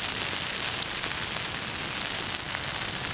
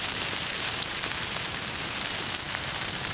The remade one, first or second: second